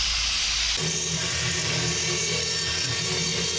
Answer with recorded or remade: recorded